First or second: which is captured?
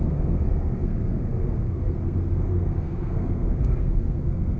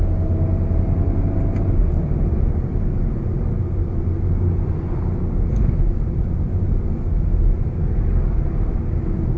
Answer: second